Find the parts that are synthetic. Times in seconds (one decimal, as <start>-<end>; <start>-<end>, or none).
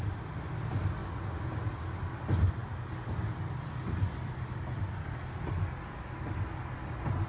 none